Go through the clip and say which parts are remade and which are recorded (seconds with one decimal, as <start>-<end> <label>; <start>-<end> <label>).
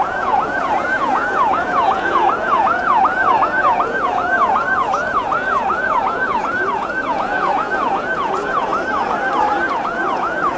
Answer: 0.0-8.7 remade; 8.7-9.7 recorded; 9.7-10.6 remade